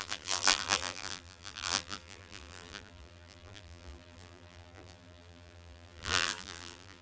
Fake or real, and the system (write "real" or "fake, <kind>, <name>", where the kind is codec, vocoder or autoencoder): fake, vocoder, BigVGAN v2